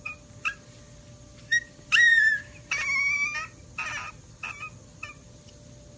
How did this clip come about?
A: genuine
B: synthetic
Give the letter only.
A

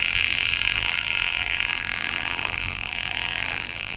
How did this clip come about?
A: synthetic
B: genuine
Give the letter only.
A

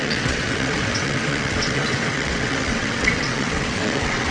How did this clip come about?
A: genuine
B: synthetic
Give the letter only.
B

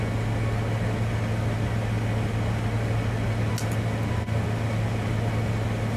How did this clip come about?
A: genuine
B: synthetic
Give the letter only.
A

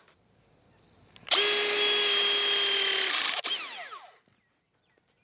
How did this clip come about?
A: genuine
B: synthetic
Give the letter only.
A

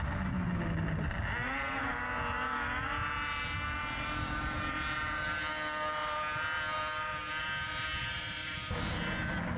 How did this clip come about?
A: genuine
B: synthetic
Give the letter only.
A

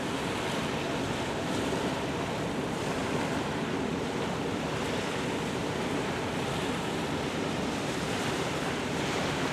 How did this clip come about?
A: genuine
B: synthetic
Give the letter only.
B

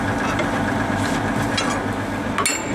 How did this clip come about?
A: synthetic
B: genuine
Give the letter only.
B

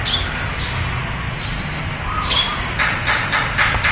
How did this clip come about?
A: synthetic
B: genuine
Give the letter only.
B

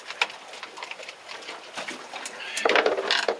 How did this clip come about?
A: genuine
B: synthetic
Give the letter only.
B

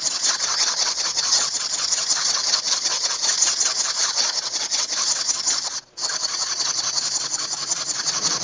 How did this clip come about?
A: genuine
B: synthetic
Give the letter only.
B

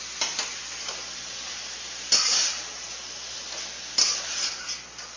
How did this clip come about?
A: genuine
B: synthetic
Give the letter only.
A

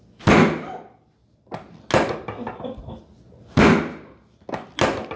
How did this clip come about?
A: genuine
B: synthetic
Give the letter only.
A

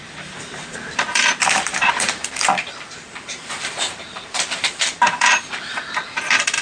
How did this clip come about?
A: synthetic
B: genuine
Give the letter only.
A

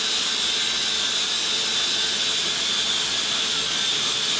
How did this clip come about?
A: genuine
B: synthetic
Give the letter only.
A